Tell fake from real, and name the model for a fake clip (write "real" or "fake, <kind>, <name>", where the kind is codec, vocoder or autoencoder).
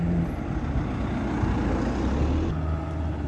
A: real